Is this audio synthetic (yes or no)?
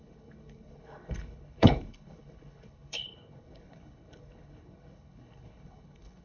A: yes